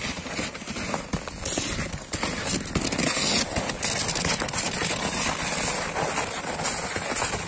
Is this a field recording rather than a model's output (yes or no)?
yes